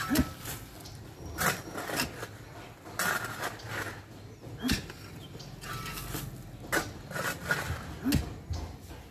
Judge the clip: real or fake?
real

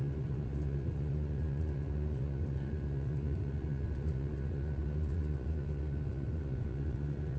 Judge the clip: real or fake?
fake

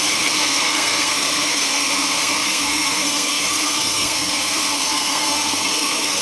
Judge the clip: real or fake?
fake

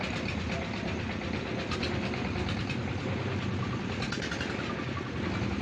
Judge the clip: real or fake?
real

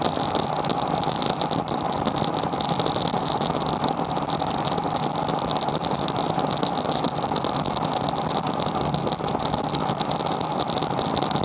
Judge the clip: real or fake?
real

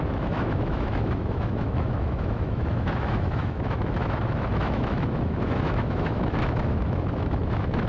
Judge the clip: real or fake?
fake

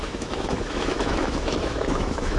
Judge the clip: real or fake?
fake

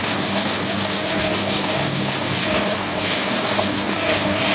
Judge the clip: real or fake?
fake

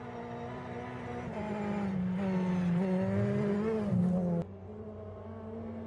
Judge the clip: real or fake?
real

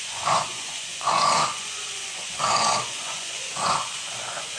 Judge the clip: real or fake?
fake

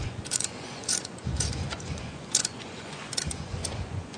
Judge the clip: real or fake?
fake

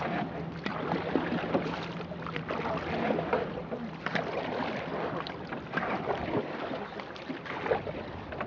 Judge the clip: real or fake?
real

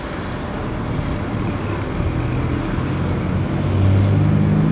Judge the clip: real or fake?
real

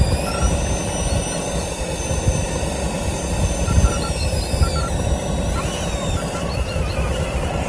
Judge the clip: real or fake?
real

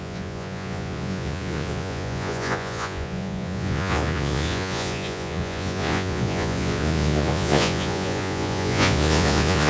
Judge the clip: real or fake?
fake